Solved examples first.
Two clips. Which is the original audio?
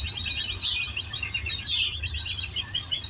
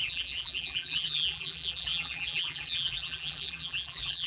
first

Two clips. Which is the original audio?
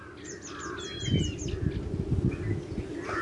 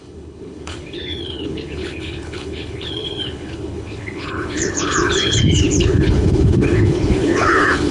first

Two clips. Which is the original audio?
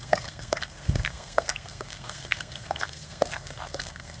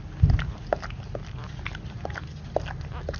second